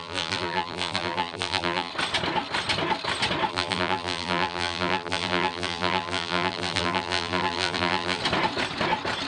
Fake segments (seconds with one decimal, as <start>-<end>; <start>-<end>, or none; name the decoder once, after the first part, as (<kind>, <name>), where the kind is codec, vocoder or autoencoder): 0.0-1.9 (vocoder, BigVGAN v2); 3.5-8.2

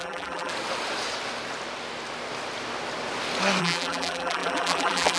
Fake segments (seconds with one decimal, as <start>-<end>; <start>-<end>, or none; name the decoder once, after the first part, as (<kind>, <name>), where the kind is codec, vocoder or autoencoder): 0.0-0.5 (vocoder, BigVGAN v2); 3.6-5.2